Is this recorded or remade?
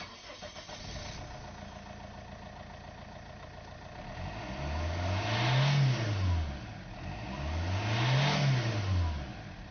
recorded